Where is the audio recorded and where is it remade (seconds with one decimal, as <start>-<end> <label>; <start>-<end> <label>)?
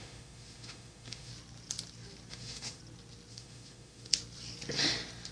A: 0.0-1.3 remade; 1.3-2.3 recorded; 2.3-2.8 remade; 2.8-3.3 recorded; 3.3-4.1 remade; 4.1-5.3 recorded